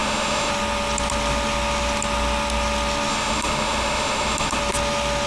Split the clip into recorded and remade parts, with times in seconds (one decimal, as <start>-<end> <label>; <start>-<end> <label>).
0.0-0.5 remade; 0.5-3.1 recorded; 3.1-4.6 remade; 4.6-5.3 recorded